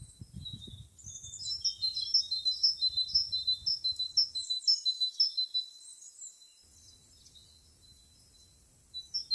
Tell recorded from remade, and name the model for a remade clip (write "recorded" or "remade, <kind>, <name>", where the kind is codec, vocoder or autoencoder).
recorded